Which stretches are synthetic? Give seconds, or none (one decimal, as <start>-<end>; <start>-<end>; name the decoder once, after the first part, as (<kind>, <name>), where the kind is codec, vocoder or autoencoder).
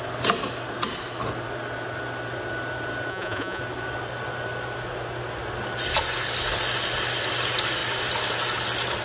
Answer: 3.1-3.6 (vocoder, Vocos)